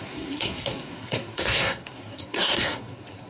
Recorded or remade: remade